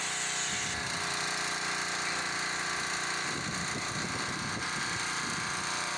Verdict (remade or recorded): recorded